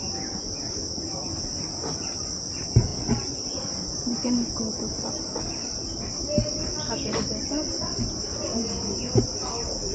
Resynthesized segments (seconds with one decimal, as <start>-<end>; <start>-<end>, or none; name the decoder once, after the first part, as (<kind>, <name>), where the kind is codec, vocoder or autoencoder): none